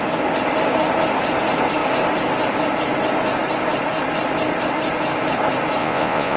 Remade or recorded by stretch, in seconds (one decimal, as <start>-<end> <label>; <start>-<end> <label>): 0.0-5.8 recorded; 5.8-6.4 remade